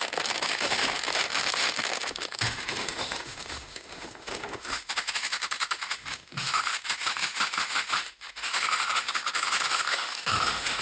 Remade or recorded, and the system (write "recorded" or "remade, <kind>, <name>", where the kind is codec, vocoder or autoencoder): remade, autoencoder, DAC-VAE